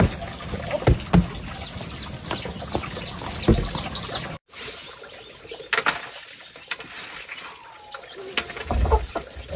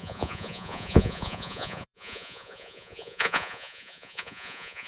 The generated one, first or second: second